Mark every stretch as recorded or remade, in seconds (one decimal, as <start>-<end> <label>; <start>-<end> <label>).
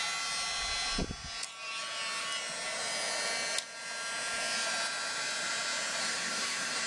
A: 0.0-6.0 recorded; 6.0-6.9 remade